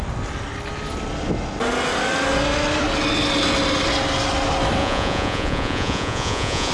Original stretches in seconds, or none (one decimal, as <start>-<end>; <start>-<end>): 0.0-4.8